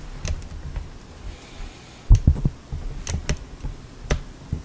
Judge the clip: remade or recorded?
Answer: recorded